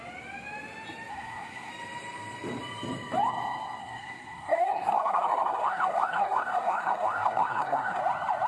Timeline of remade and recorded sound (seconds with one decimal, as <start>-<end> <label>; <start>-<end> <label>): 0.0-1.1 recorded; 1.1-1.7 remade; 1.7-3.8 recorded; 3.8-8.0 remade; 8.0-8.5 recorded